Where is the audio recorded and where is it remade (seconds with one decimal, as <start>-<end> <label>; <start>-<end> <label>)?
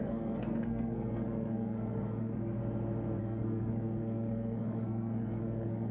0.0-2.6 remade; 2.6-3.2 recorded; 3.2-5.9 remade